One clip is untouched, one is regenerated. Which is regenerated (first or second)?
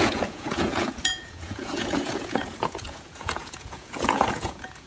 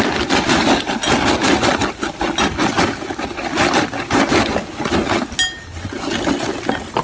first